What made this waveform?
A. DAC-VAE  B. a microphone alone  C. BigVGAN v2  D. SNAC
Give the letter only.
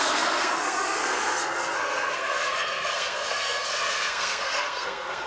D